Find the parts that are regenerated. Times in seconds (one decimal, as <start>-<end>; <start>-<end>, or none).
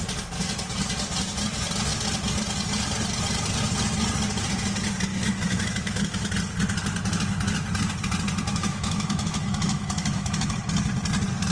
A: 5.1-6.3; 8.5-10.6